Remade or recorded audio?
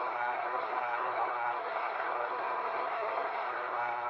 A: remade